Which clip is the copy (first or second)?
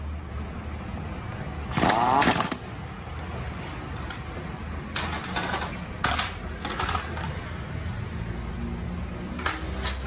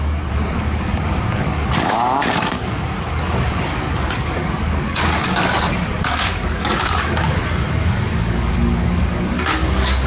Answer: second